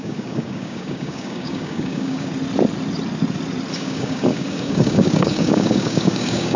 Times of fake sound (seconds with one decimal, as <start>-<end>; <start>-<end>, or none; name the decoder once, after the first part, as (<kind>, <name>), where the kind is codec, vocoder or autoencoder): 0.0-2.3 (codec, DAC); 3.7-6.6